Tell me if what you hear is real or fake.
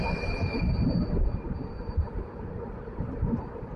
fake